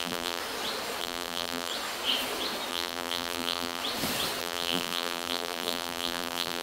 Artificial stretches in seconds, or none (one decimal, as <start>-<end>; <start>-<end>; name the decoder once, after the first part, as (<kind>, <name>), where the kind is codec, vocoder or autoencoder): 0.0-0.4 (vocoder, BigVGAN v2); 1.0-1.7; 2.7-3.8; 4.4-6.6